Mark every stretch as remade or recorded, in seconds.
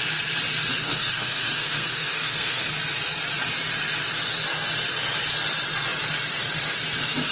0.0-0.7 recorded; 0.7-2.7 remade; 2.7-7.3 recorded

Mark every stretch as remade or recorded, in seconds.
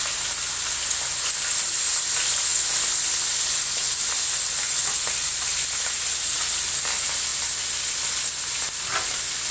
0.0-7.3 recorded; 7.3-8.6 remade; 8.6-9.5 recorded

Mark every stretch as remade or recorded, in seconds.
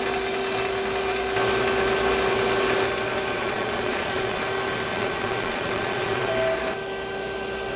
0.0-3.4 recorded; 3.4-4.4 remade; 4.4-4.9 recorded; 4.9-6.3 remade; 6.3-7.8 recorded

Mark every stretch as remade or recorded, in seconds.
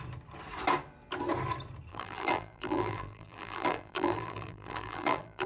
0.0-1.9 recorded; 1.9-5.5 remade